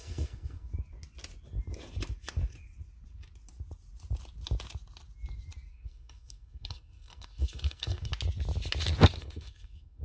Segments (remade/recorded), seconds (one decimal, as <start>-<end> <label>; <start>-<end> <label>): 0.0-0.7 remade; 0.7-5.7 recorded; 5.7-8.1 remade; 8.1-9.2 recorded; 9.2-10.0 remade